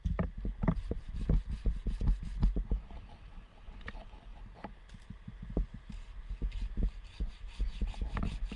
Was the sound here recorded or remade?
recorded